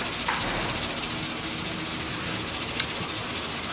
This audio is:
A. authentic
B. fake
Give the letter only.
A